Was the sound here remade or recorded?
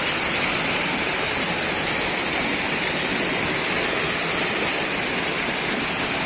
recorded